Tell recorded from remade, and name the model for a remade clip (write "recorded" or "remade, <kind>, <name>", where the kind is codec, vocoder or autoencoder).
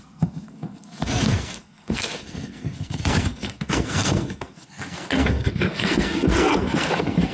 remade, codec, SNAC